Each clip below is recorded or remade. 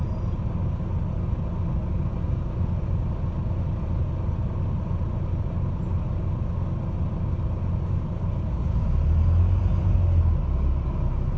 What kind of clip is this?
recorded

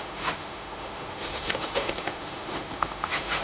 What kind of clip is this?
remade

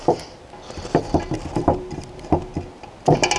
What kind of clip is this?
recorded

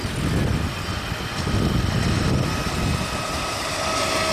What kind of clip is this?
recorded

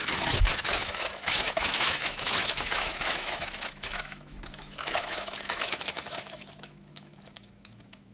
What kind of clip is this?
remade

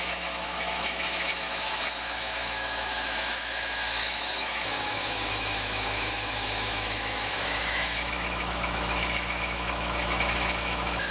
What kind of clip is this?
remade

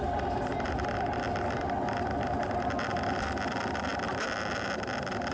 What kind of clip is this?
recorded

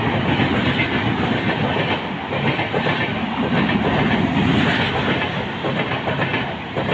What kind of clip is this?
recorded